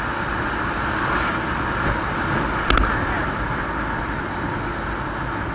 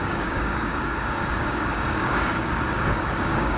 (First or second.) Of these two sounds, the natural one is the first